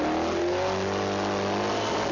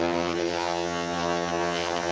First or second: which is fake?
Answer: second